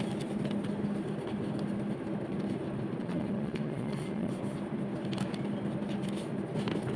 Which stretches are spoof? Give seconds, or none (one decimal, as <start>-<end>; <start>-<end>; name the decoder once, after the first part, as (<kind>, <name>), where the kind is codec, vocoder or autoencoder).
3.0-4.3 (vocoder, Vocos)